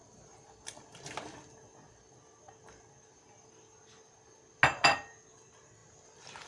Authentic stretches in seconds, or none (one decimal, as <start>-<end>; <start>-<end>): 0.0-6.5